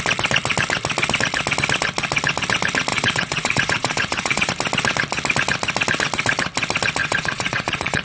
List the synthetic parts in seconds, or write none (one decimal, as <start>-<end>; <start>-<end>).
2.9-4.5; 7.0-8.0